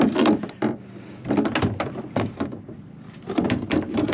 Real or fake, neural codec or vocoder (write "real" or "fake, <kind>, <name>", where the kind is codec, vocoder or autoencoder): real